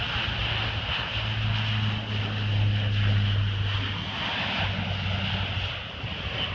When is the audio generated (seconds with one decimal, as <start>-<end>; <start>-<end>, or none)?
none